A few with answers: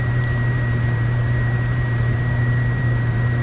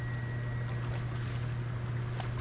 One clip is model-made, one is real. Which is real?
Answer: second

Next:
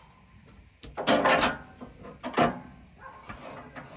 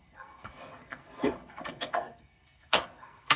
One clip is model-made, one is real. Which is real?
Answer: first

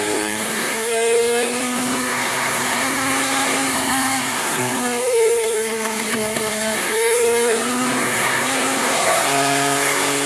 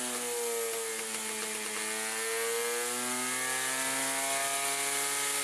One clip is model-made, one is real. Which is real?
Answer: second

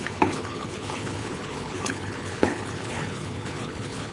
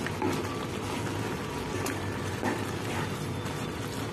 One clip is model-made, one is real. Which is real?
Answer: second